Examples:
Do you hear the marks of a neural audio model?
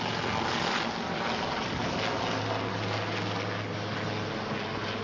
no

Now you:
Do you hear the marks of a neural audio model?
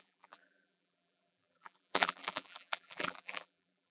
yes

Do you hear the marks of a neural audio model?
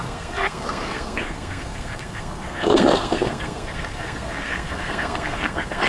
yes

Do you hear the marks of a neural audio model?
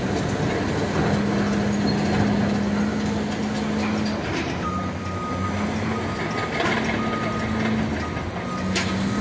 no